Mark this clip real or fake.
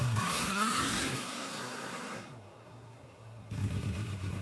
fake